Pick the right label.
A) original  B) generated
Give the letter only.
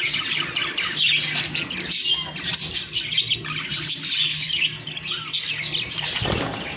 A